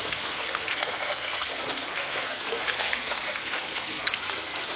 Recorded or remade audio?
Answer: remade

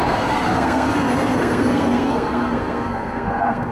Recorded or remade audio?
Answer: remade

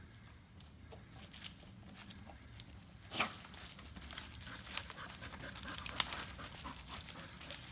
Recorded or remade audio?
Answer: recorded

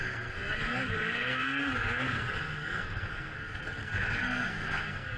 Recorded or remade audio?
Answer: remade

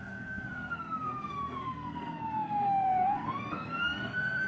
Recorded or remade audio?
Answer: remade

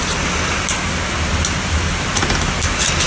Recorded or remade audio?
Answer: recorded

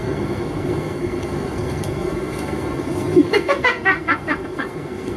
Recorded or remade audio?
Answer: remade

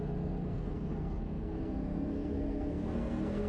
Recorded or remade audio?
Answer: remade